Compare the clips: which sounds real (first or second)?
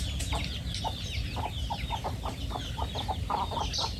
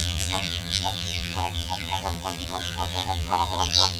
first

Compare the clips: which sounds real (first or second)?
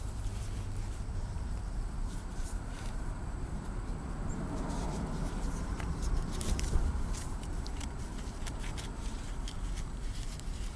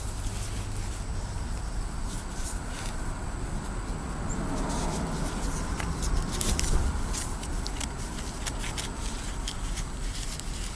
second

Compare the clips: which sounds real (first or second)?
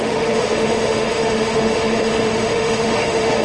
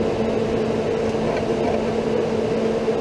second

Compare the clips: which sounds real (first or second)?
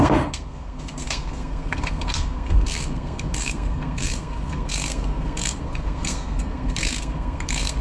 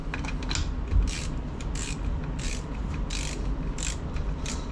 second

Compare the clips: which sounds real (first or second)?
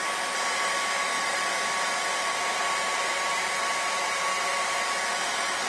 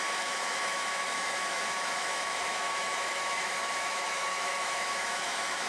first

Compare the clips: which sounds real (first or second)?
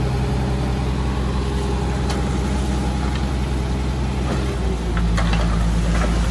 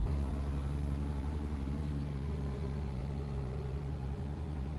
first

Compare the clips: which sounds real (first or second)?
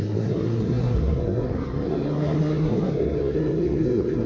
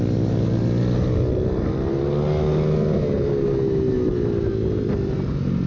second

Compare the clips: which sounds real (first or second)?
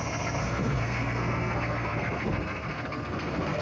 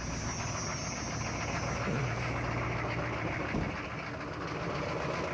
second